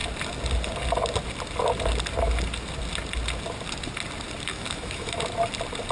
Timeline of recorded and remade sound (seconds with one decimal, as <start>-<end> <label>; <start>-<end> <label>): 0.0-4.5 recorded; 4.5-5.2 remade; 5.2-5.9 recorded